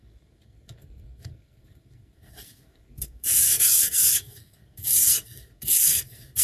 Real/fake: fake